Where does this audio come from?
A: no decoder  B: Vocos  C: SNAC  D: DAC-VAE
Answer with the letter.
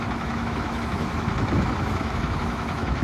D